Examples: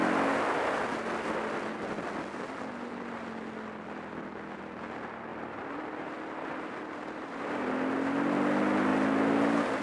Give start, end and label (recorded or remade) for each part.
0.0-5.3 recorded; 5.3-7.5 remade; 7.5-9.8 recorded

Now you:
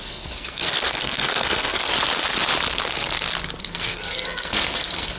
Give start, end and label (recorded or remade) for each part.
0.0-1.9 remade; 1.9-3.6 recorded; 3.6-5.2 remade

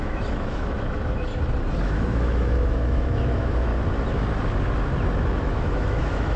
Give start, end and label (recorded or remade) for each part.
0.0-1.3 remade; 1.3-1.8 recorded; 1.8-3.7 remade; 3.7-5.4 recorded; 5.4-6.4 remade

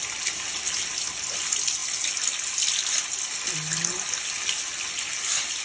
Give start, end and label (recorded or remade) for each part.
0.0-5.6 recorded

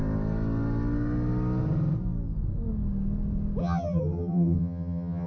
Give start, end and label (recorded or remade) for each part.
0.0-3.6 recorded; 3.6-5.3 remade

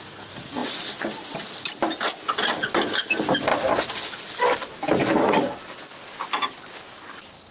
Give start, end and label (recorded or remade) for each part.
0.0-7.5 recorded